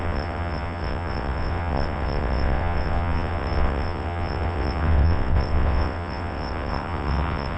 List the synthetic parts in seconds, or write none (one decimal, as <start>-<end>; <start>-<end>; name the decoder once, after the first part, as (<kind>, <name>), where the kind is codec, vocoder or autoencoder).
0.0-7.6 (vocoder, WaveNeXt)